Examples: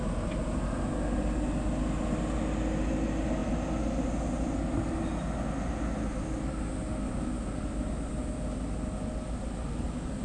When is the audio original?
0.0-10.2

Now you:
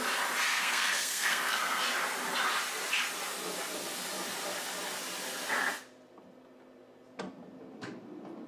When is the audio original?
0.0-0.5; 1.8-8.5

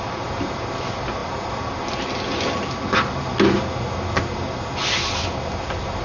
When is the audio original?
0.0-6.0

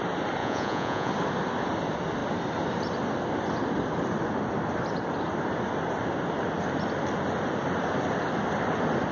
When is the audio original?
0.0-0.4; 1.1-9.1

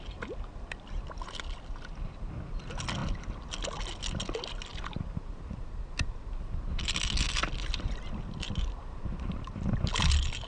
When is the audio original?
0.0-10.5

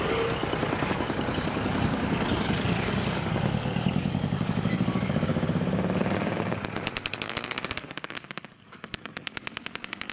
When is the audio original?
0.4-0.9; 5.3-7.1

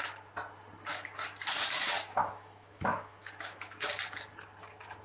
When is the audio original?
0.0-0.9; 3.9-5.0